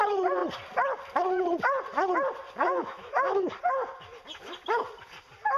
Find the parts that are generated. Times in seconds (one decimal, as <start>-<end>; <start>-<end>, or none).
2.6-3.5

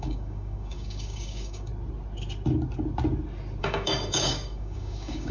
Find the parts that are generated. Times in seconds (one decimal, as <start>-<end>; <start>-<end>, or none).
0.0-1.7; 3.6-5.3

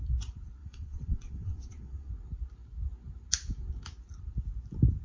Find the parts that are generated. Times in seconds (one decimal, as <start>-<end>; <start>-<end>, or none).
0.6-2.1

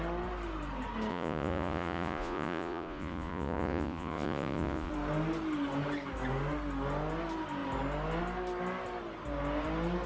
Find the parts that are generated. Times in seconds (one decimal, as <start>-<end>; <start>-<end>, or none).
1.1-4.9

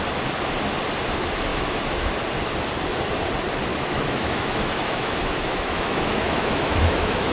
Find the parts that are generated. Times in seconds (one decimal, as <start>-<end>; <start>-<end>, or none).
1.5-2.1; 3.7-7.3

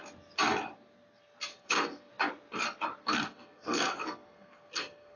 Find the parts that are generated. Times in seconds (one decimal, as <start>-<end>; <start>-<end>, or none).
1.5-2.1; 3.0-5.2